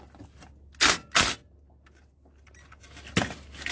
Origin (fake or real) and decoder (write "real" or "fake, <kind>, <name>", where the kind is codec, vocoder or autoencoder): real